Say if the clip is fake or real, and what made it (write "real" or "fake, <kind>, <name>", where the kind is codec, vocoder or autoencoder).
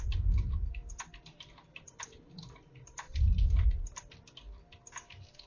fake, vocoder, BigVGAN v2